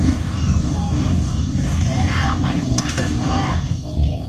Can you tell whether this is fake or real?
fake